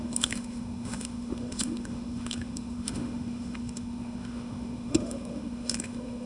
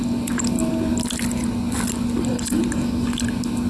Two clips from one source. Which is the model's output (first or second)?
first